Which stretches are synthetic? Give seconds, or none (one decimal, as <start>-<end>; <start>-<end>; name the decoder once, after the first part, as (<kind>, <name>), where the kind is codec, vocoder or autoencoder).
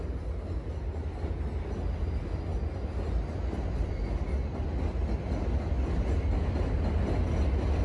none